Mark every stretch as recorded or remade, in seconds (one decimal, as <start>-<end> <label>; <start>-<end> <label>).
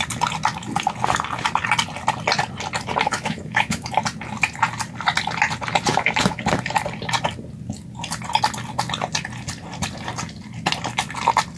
0.0-3.1 recorded; 3.1-3.9 remade; 3.9-5.9 recorded; 5.9-6.4 remade; 6.4-11.6 recorded